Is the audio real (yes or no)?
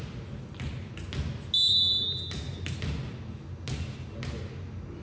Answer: yes